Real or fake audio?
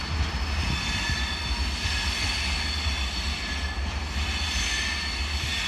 real